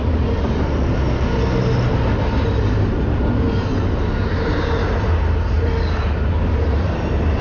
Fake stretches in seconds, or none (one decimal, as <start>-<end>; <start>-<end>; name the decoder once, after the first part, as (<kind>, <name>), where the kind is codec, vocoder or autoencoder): none

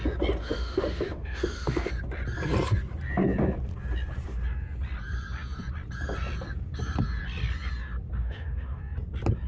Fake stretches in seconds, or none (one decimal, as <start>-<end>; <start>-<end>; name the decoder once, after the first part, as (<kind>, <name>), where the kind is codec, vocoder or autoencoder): 0.4-1.9 (autoencoder, DAC-VAE); 8.2-8.8

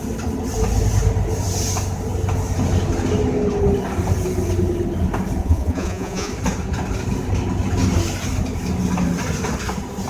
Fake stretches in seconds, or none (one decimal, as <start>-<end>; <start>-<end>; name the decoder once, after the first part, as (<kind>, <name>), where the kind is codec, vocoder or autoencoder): 5.4-6.3 (vocoder, Vocos)

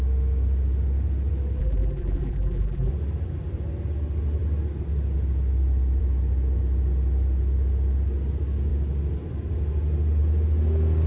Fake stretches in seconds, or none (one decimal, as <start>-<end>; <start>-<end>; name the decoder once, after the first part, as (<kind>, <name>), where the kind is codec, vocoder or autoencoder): 1.6-2.9 (vocoder, BigVGAN v2)

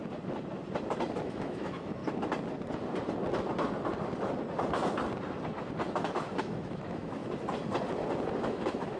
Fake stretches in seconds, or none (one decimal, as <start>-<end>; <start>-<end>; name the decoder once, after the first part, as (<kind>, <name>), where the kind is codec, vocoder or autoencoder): 1.2-2.0 (autoencoder, DAC-VAE); 6.4-7.2; 8.4-9.0

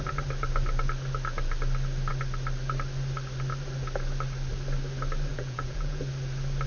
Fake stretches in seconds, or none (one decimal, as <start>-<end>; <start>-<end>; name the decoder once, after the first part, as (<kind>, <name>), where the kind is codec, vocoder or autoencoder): 5.3-6.0 (vocoder, Vocos)